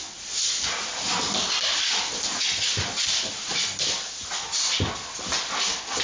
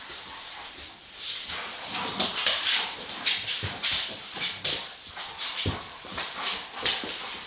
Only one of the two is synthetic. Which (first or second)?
second